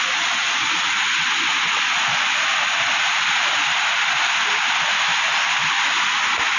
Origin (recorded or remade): recorded